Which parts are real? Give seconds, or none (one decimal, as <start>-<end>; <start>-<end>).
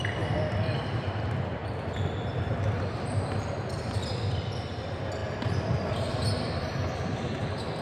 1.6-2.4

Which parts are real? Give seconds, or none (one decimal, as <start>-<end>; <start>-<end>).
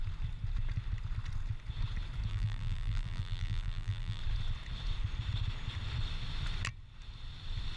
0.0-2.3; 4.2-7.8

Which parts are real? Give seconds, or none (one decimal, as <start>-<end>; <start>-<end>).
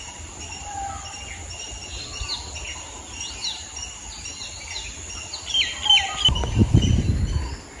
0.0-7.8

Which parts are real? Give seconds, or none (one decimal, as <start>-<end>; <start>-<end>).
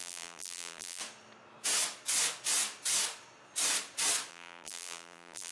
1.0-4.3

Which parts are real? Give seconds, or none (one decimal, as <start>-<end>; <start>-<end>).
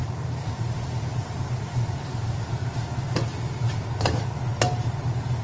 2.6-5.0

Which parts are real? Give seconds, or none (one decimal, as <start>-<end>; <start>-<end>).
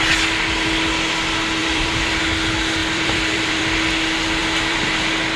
0.0-1.6; 2.2-2.8; 3.6-4.4; 5.0-5.4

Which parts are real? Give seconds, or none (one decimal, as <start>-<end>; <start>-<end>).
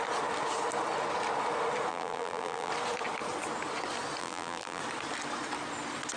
0.0-1.9; 2.7-4.2; 4.8-6.2